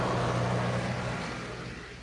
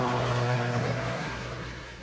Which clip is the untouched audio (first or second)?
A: first